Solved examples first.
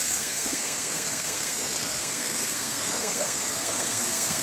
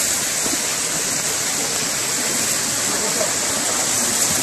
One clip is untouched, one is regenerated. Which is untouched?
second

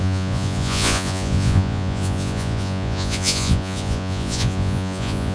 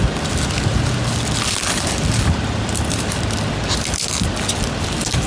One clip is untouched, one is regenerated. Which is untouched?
second